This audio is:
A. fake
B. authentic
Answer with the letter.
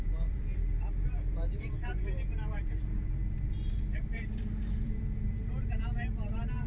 A